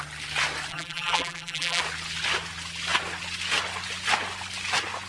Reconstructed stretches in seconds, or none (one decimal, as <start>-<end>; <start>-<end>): 0.7-1.8